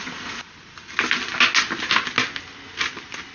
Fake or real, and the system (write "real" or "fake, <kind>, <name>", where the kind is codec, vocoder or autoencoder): real